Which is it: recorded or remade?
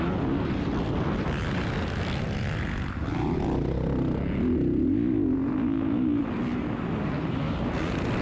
recorded